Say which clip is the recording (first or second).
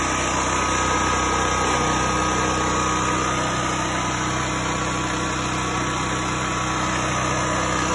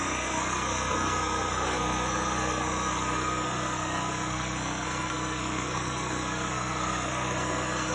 first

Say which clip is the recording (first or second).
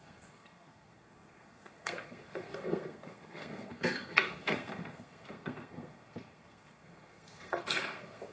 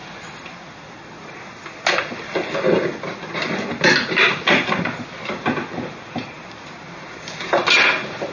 second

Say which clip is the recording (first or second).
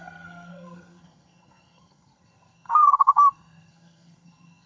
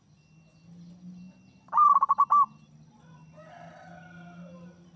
second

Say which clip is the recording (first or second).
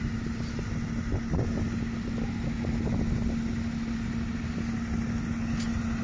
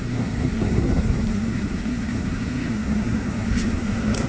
first